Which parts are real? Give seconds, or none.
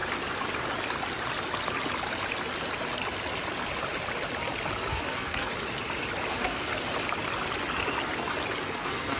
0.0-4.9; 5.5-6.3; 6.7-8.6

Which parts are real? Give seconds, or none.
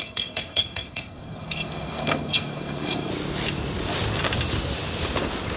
3.1-5.6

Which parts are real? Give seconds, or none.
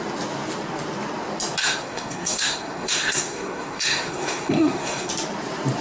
0.0-1.6; 5.1-5.8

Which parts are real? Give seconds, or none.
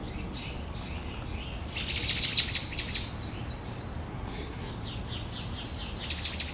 0.0-4.1; 4.7-6.5